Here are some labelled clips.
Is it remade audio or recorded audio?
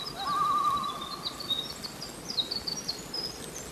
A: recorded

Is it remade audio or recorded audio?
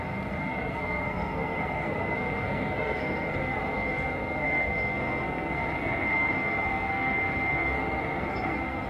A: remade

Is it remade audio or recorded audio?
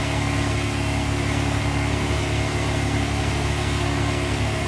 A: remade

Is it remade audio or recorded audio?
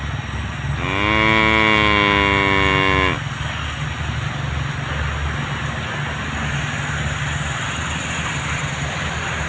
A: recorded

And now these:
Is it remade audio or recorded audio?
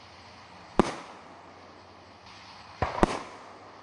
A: recorded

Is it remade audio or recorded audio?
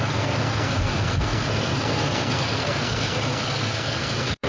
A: remade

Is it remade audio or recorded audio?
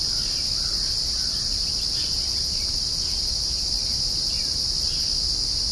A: recorded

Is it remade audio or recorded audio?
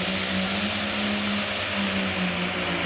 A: recorded